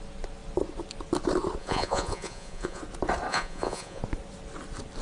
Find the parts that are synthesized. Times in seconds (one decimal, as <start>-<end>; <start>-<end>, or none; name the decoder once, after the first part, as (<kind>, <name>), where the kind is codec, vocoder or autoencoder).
1.6-2.8 (vocoder, Vocos); 3.3-4.0